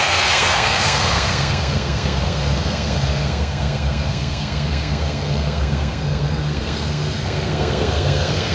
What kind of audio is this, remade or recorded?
remade